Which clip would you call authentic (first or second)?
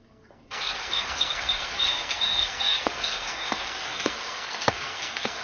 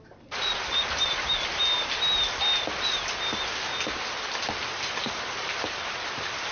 second